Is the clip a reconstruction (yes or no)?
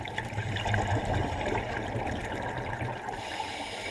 no